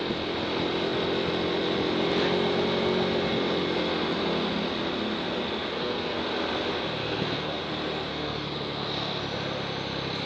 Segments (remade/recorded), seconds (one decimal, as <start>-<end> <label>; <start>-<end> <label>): 0.0-5.7 recorded; 5.7-6.2 remade; 6.2-7.0 recorded; 7.0-7.6 remade; 7.6-8.1 recorded; 8.1-9.2 remade; 9.2-10.3 recorded